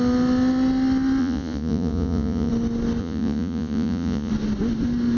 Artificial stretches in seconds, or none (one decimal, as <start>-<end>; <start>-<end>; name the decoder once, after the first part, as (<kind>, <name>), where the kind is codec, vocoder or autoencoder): 1.2-2.5 (vocoder, Vocos); 3.0-4.3